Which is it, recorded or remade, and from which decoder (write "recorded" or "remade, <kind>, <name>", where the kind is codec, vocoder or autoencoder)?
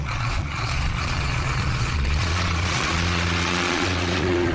remade, vocoder, Vocos